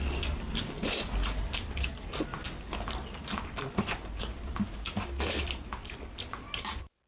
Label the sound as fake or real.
real